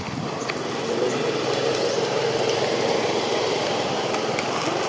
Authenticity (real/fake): real